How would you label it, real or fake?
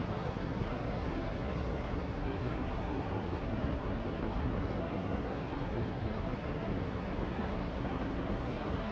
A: fake